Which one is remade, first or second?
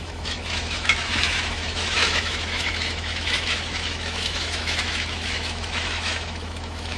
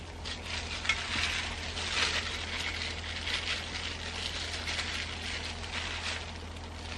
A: first